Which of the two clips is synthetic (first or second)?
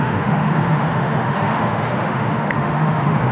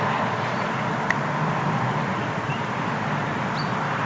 first